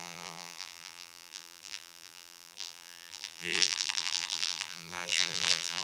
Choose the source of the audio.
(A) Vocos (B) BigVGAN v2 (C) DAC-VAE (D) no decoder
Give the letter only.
B